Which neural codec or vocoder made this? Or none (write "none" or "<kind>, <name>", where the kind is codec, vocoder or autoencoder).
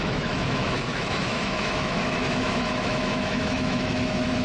autoencoder, DAC-VAE